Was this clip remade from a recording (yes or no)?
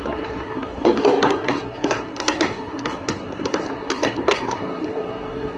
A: yes